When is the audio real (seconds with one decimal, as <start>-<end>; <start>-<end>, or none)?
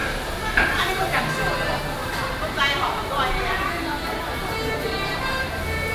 0.0-2.0; 5.5-5.9